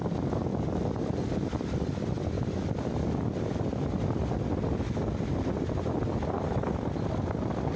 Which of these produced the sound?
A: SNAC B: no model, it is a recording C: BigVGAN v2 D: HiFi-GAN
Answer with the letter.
B